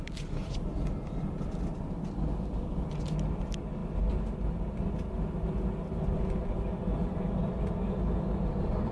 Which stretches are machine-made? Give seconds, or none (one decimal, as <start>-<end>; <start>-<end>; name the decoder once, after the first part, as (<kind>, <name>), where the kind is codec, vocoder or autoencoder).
none